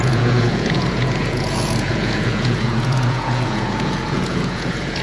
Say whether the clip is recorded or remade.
remade